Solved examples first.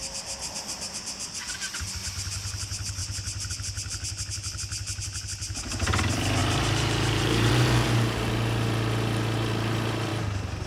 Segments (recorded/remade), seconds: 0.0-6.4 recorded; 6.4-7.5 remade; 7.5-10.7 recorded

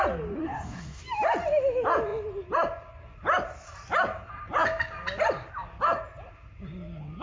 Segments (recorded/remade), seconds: 0.0-0.4 recorded; 0.4-1.0 remade; 1.0-7.2 recorded

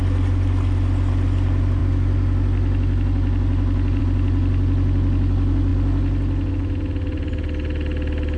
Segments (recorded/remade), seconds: 0.0-8.4 recorded